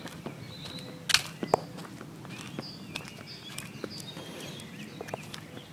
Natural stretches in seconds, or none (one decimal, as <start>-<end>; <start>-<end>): 0.0-5.7